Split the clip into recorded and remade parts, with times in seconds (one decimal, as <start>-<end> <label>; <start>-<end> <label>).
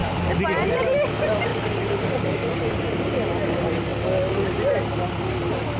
0.0-5.8 recorded